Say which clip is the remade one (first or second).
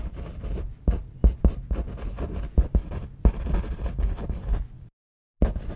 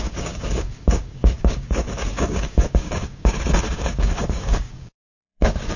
second